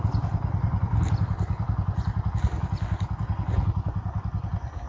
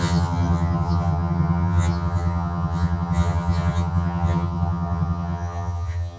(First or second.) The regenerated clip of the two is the second